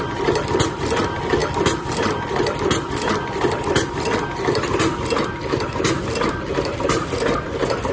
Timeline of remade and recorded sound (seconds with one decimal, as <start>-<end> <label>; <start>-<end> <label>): 0.0-7.9 recorded